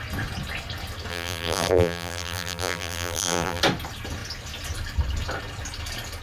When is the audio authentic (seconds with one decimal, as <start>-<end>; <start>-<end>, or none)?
0.0-1.1; 3.6-6.2